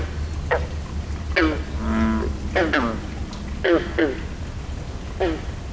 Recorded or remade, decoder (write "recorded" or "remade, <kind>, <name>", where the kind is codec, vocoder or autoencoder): recorded